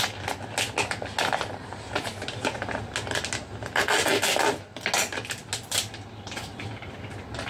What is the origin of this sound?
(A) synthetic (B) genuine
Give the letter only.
B